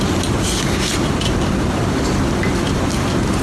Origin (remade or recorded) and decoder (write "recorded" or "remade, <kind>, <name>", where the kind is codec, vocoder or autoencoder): recorded